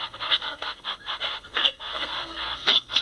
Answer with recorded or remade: remade